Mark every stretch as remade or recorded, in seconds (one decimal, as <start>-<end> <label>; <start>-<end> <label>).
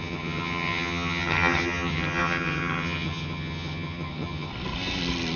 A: 0.0-4.5 remade; 4.5-5.4 recorded